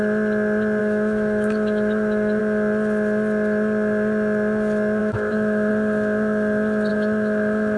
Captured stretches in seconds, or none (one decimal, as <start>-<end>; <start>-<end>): 0.0-0.8; 2.4-5.0; 5.7-6.9